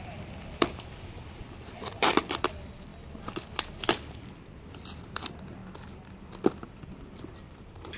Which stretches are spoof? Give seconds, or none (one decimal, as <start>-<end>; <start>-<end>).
0.0-2.9; 3.8-5.6; 7.2-8.0